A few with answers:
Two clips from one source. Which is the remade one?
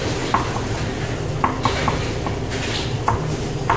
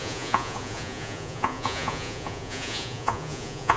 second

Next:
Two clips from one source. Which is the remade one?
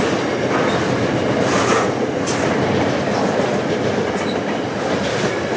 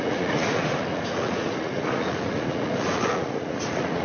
second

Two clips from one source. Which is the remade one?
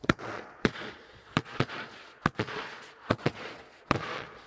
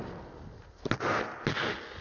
first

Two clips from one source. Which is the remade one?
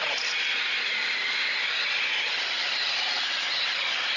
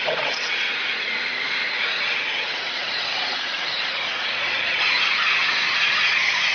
second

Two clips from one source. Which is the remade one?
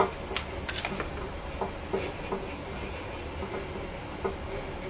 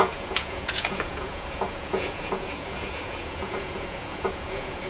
second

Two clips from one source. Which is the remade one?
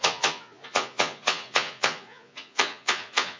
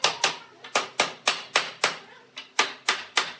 first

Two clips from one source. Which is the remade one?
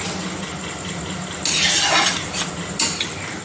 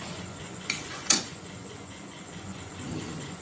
second